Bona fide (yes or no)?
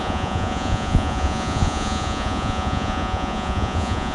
no